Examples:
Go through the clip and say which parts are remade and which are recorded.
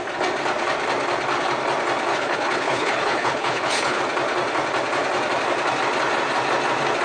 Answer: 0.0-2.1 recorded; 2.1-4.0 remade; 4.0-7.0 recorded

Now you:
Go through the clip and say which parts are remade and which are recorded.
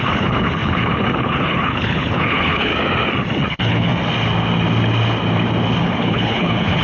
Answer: 0.0-2.7 remade; 2.7-3.5 recorded; 3.5-3.9 remade; 3.9-5.8 recorded; 5.8-6.8 remade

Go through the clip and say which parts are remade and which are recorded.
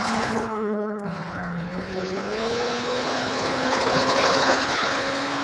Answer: 0.0-5.4 remade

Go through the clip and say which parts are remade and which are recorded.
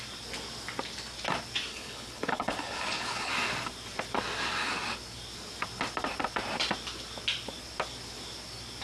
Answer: 0.0-1.7 recorded; 1.7-3.3 remade; 3.3-8.8 recorded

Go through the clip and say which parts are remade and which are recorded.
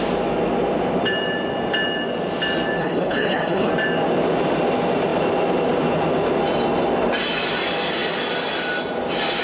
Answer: 0.0-2.8 recorded; 2.8-3.7 remade; 3.7-9.4 recorded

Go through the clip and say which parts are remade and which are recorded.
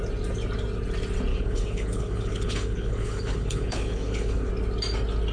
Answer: 0.0-1.3 recorded; 1.3-4.5 remade; 4.5-5.3 recorded